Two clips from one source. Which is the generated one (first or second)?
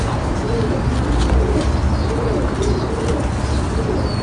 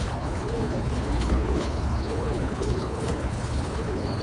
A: second